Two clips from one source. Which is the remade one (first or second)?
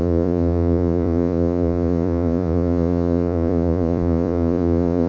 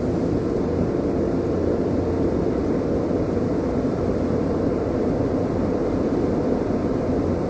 first